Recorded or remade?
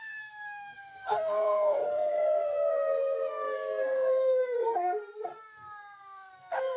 remade